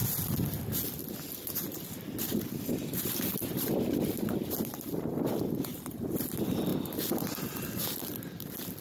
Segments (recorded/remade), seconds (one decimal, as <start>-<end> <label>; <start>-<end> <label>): 0.0-8.8 recorded